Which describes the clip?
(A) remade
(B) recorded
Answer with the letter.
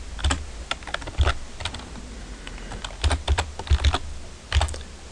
B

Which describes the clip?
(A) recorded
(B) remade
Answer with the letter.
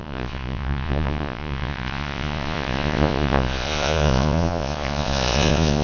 B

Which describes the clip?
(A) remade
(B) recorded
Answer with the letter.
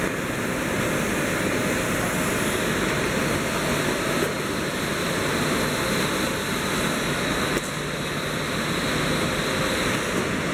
B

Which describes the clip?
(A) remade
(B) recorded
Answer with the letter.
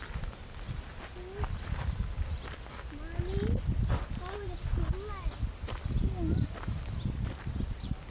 B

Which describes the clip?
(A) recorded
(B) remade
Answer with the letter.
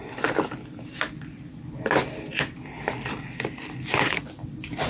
A